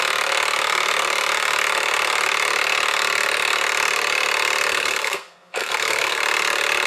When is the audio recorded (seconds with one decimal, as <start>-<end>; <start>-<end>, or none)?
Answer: 0.0-4.7; 6.2-6.9